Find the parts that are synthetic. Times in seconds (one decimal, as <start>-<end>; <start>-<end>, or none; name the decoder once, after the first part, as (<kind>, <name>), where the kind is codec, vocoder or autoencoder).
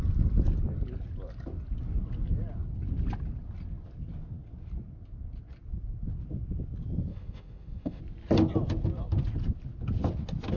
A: 7.1-8.0 (autoencoder, DAC-VAE)